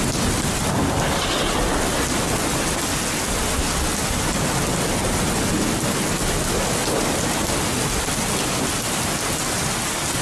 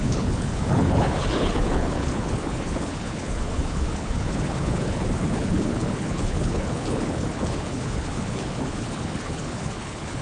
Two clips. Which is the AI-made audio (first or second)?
second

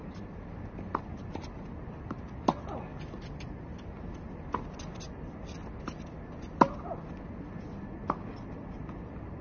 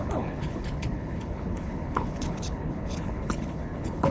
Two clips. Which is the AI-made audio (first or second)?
second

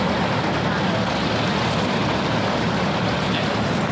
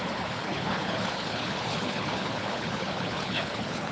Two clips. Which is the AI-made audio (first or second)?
second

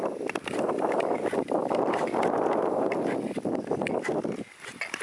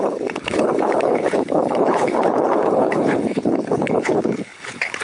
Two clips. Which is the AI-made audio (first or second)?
second